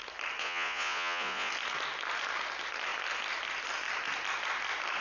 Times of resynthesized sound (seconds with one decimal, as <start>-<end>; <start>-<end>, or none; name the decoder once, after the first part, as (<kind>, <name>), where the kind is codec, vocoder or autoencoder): 0.4-1.5 (vocoder, Vocos)